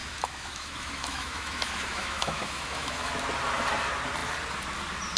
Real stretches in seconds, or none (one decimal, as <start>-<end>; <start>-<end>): 3.1-5.2